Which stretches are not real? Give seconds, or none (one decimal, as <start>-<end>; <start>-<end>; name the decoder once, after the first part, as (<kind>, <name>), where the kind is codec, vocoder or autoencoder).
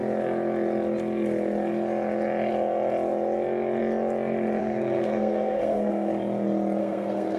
4.6-6.1 (codec, SNAC); 6.8-7.4